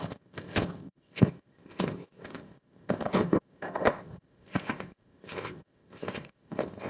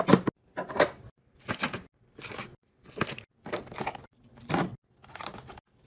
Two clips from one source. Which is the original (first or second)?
second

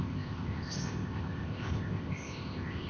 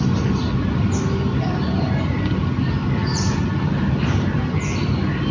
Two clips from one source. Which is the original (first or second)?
second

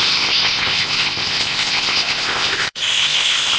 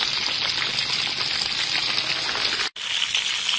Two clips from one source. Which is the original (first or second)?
second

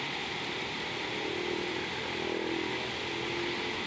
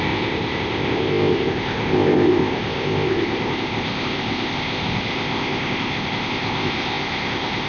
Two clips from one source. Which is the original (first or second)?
first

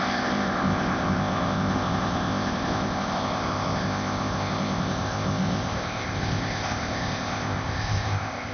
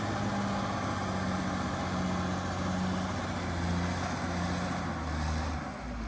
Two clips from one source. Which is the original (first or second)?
second